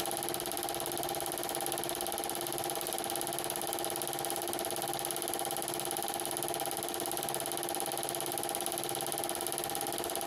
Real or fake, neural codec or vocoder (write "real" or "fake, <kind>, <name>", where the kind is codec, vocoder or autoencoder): real